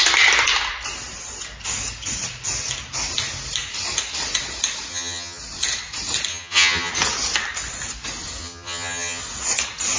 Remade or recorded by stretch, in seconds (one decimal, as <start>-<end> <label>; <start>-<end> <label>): 0.0-4.9 recorded; 4.9-5.4 remade; 5.4-6.3 recorded; 6.3-6.9 remade; 6.9-8.4 recorded; 8.4-9.2 remade; 9.2-10.0 recorded